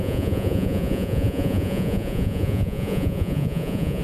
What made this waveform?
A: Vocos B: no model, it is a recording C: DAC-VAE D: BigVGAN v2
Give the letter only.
A